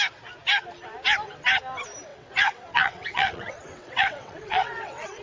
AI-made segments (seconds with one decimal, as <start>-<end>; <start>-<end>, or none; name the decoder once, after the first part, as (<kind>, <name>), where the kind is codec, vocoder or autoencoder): 2.1-5.2 (vocoder, WaveNeXt)